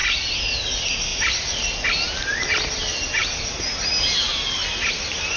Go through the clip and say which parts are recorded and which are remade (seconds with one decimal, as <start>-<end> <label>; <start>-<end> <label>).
0.0-5.4 recorded